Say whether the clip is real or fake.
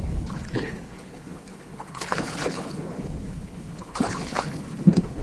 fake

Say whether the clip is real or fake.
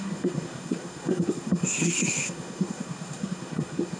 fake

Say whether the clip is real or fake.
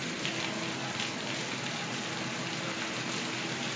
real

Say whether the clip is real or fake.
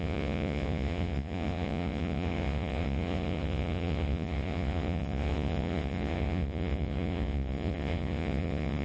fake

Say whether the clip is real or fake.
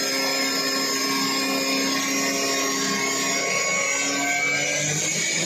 real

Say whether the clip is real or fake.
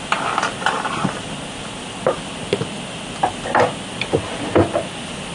real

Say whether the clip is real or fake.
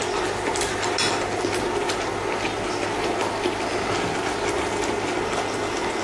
real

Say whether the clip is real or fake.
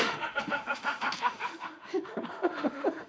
fake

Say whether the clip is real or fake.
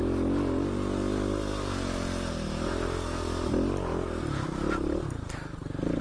real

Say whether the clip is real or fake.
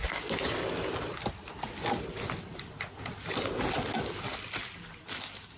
real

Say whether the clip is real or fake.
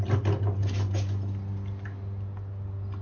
real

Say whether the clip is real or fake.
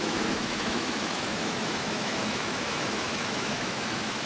fake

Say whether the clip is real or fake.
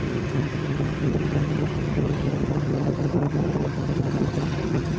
fake